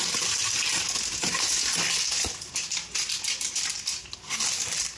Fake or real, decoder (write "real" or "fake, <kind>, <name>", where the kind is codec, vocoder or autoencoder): real